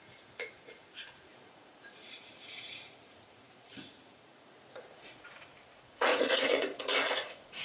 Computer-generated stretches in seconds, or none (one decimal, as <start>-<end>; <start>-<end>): 0.0-7.6